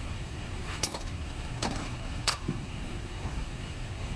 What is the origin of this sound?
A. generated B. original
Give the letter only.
A